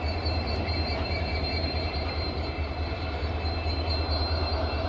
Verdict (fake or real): fake